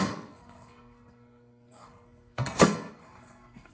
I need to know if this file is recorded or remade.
remade